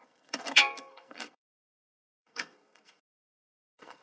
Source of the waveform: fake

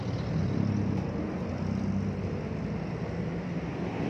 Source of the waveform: real